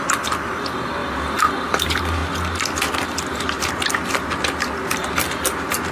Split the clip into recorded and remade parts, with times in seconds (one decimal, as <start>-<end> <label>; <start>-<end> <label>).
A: 0.0-1.0 remade; 1.0-1.6 recorded; 1.6-2.2 remade; 2.2-3.7 recorded; 3.7-5.0 remade; 5.0-5.9 recorded